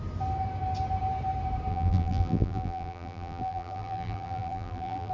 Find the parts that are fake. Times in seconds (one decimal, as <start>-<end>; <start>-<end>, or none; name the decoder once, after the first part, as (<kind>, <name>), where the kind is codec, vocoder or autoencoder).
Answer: 1.7-5.1 (vocoder, BigVGAN v2)